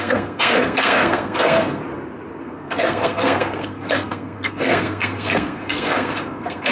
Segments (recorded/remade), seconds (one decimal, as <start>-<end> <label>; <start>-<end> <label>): 0.0-1.8 remade; 1.8-2.4 recorded; 2.4-6.7 remade